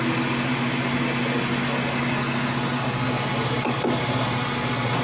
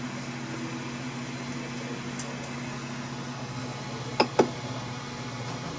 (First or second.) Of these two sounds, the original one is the second